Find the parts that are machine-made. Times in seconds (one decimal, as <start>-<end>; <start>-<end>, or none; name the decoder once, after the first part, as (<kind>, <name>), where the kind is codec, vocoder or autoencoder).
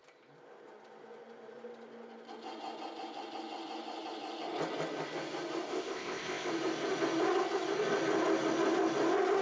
5.7-6.5 (codec, ZipCodec)